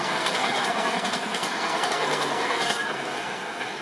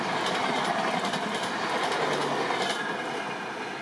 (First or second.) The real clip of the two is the second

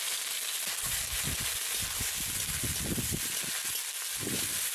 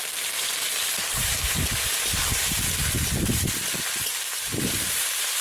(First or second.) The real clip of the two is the first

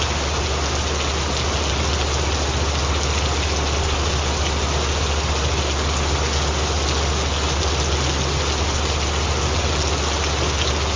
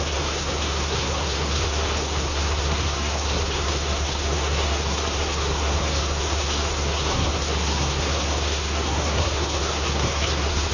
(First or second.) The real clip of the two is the first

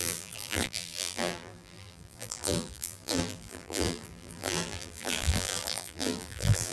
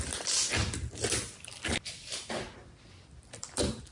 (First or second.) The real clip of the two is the second